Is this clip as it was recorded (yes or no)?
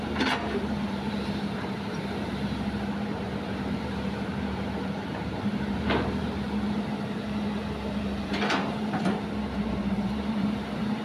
no